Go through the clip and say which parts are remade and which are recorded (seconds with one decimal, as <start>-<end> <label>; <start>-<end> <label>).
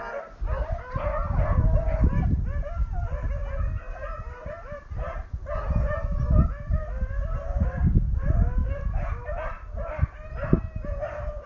0.0-11.5 recorded